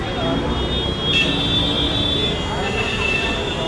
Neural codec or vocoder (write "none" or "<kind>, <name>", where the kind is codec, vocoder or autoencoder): none